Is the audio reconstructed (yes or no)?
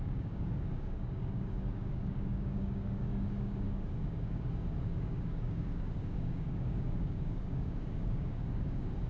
yes